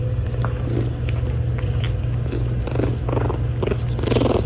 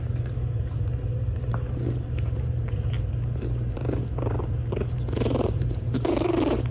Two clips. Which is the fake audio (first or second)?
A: second